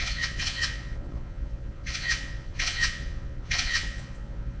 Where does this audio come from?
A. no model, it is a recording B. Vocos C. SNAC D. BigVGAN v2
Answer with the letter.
B